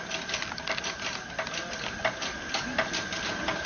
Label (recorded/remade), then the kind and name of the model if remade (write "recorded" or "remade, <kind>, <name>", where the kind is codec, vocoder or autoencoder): recorded